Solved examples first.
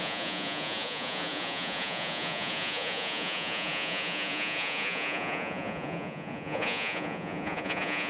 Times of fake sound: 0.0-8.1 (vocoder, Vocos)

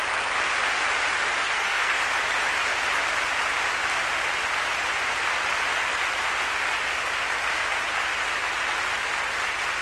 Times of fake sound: 1.4-2.0 (codec, SNAC)

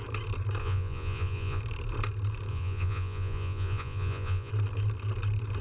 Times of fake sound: 0.6-1.6 (vocoder, Vocos); 2.5-4.5

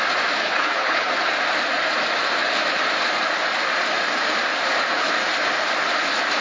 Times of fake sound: 0.4-1.1 (codec, HILCodec)

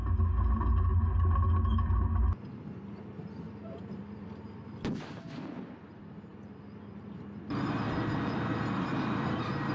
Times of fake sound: none

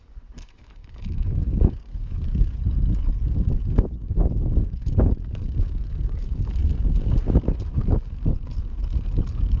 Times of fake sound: 0.0-6.6 (codec, DAC); 7.4-9.6

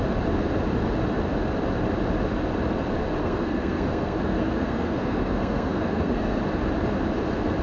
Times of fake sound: 3.2-6.4 (codec, SNAC)